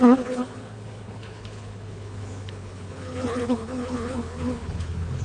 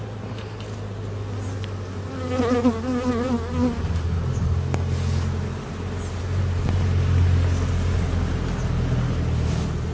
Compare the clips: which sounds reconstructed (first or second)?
first